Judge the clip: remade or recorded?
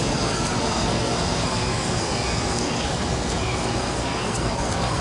remade